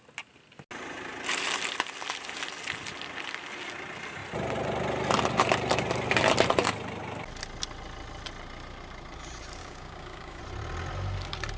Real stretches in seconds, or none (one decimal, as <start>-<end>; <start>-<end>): 0.0-9.6; 10.4-11.6